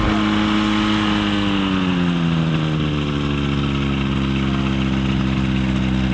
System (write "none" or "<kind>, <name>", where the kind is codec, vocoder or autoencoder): none